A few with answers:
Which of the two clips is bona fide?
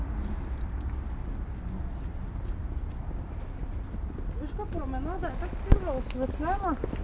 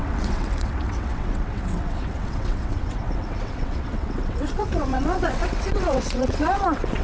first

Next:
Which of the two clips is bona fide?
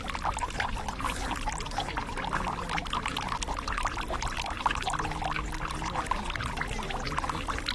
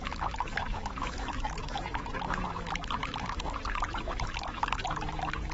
first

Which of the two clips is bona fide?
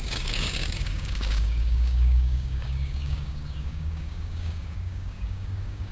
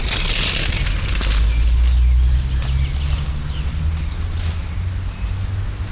second